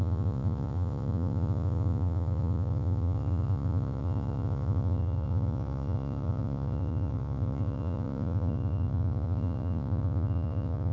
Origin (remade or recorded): remade